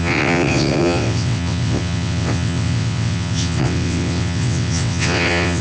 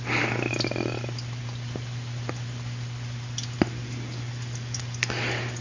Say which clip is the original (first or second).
second